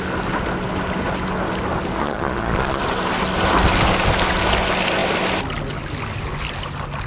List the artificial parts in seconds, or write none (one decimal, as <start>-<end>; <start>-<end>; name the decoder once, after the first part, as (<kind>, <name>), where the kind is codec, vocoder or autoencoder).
2.0-2.8 (vocoder, Vocos)